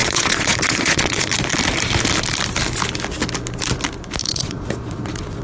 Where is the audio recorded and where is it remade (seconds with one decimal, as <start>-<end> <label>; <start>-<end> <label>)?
0.0-1.3 remade; 1.3-4.2 recorded; 4.2-5.4 remade